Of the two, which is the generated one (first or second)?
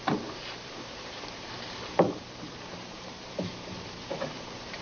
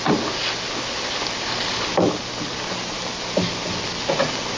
first